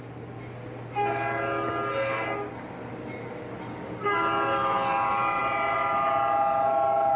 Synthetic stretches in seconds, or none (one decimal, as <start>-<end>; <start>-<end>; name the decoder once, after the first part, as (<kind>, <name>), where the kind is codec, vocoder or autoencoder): none